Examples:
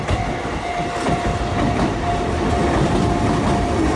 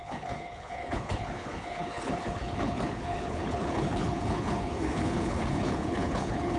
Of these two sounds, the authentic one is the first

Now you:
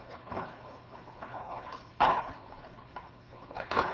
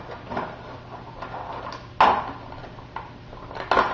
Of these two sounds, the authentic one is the second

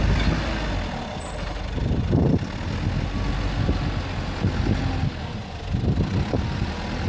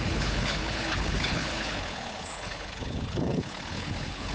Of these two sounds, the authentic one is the first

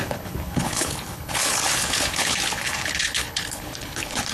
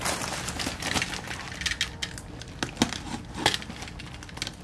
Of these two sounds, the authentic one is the second